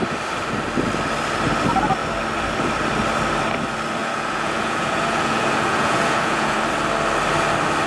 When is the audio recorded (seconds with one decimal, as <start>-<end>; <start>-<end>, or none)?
0.0-4.0; 6.6-7.9